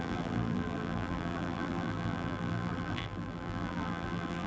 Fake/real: fake